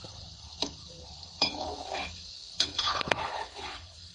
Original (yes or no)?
no